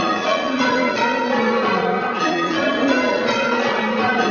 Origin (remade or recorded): remade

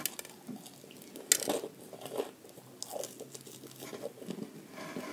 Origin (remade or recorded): recorded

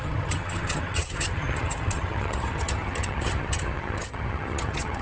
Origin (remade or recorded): remade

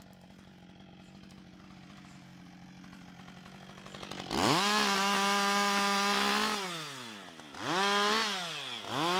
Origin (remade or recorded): recorded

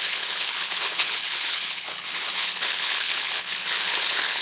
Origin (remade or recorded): remade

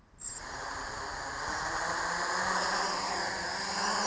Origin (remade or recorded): recorded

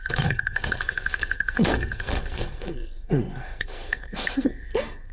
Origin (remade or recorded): remade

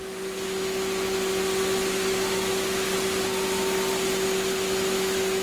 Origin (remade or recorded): recorded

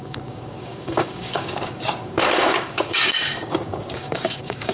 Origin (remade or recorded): remade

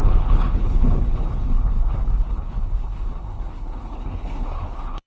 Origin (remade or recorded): remade